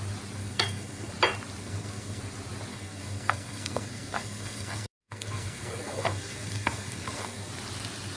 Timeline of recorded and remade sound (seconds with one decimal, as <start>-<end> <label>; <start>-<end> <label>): 0.0-0.4 recorded; 0.4-1.1 remade; 1.1-1.6 recorded; 1.6-2.2 remade; 2.2-2.7 recorded; 2.7-7.5 remade; 7.5-8.2 recorded